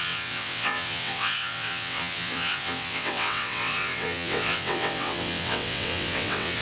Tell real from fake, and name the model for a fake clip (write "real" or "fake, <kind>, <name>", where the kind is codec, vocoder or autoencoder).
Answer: fake, vocoder, WaveNeXt